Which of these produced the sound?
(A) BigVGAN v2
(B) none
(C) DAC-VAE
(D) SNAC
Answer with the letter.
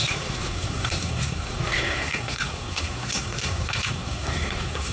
D